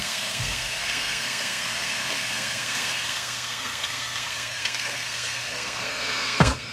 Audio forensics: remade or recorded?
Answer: remade